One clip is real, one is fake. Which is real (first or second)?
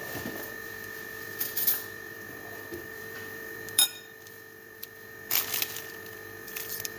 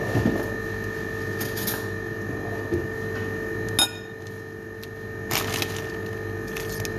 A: second